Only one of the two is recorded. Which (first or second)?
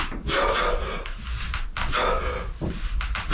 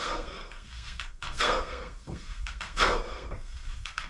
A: first